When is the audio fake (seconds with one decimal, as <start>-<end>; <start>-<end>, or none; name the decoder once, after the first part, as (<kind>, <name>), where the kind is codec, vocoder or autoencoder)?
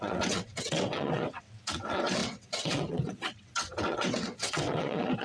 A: 0.0-5.2 (vocoder, WaveNeXt)